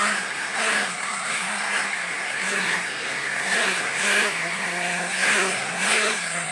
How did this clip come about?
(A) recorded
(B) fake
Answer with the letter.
B